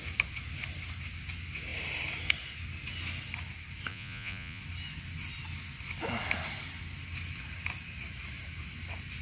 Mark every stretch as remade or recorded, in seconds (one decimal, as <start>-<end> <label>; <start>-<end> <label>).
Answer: 0.0-3.9 recorded; 3.9-4.6 remade; 4.6-9.2 recorded